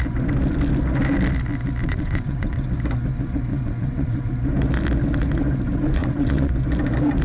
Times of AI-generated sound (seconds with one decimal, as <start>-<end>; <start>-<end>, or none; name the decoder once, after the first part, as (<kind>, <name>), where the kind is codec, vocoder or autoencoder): 1.8-2.7 (vocoder, WaveNeXt); 3.5-4.3; 6.0-6.5